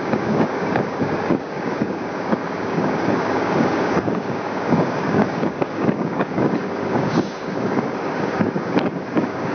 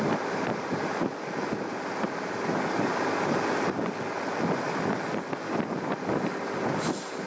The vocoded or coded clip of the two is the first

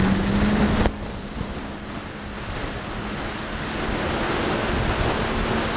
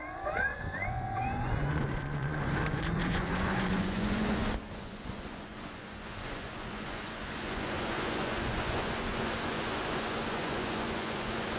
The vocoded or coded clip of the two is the second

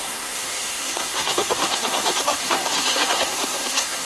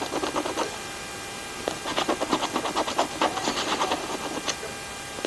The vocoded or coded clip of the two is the first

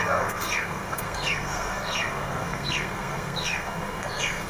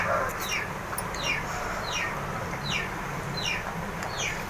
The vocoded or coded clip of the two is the first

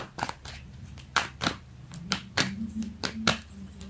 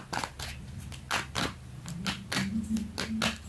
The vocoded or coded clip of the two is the first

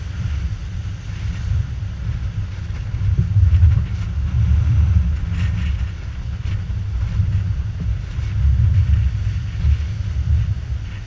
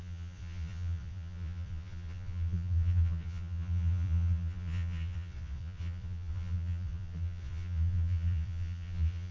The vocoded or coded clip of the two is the second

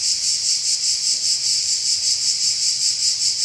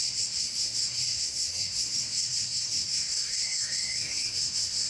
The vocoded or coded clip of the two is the second